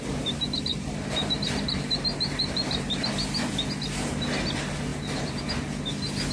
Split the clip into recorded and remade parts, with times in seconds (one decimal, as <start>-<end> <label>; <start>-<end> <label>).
0.0-0.7 recorded; 0.7-3.1 remade; 3.1-4.9 recorded; 4.9-5.4 remade; 5.4-6.3 recorded